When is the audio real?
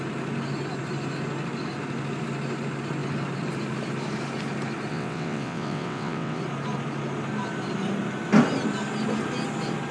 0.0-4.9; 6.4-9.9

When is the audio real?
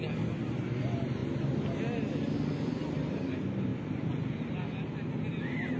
0.0-5.8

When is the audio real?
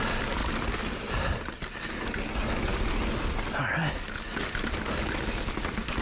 0.0-6.0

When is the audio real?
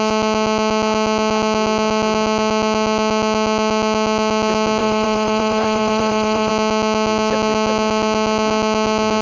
0.0-4.8; 6.5-9.2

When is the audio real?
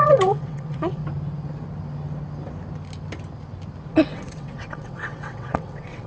1.0-3.9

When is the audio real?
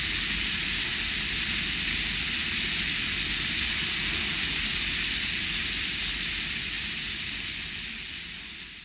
0.0-8.8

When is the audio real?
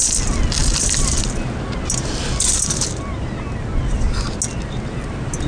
0.0-5.5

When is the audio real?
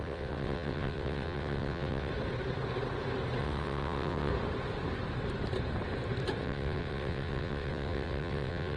2.1-3.4; 4.3-6.4